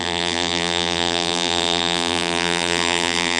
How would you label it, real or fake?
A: fake